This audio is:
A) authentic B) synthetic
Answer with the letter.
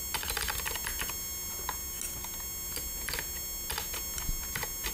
A